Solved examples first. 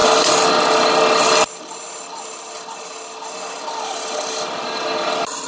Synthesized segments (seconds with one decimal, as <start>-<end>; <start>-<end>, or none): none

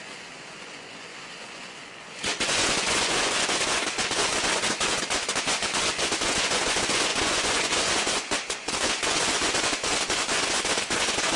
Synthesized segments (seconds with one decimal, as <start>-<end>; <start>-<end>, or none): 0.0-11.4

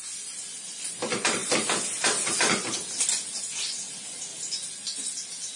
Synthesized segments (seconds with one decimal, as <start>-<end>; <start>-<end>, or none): none

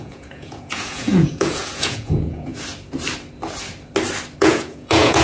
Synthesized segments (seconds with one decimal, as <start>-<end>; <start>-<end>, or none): 0.0-2.5; 4.4-5.2

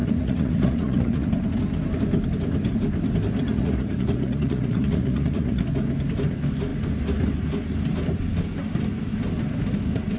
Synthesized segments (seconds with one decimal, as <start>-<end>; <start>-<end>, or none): 0.0-1.3; 3.5-5.6

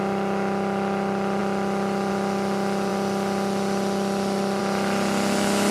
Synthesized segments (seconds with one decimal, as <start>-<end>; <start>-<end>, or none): none

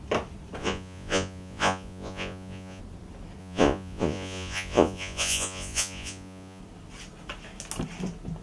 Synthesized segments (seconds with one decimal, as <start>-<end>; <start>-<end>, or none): 0.6-2.8; 3.4-6.6

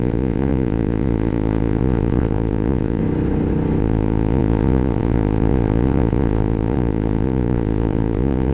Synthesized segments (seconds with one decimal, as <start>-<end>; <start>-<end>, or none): 0.0-3.0; 3.8-8.5